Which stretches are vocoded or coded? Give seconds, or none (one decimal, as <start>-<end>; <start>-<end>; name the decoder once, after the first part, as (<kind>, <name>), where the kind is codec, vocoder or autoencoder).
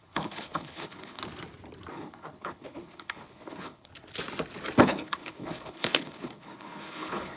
0.0-1.2 (codec, HILCodec); 1.9-3.9; 4.8-7.4